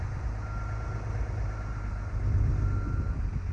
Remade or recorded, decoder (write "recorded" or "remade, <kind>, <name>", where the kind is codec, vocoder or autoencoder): recorded